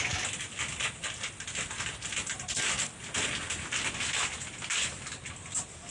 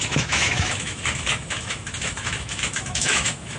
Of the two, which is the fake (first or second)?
second